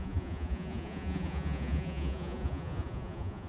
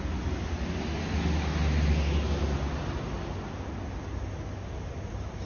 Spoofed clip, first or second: first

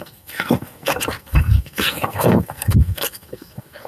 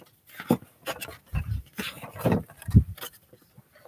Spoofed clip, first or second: first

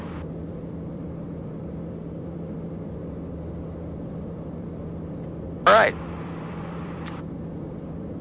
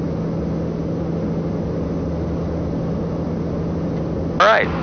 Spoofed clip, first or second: first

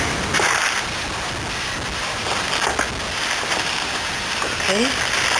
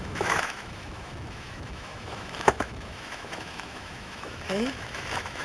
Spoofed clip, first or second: second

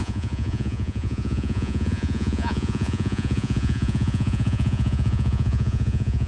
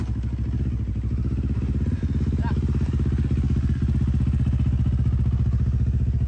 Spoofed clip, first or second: first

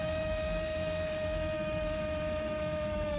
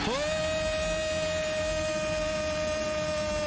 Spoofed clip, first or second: first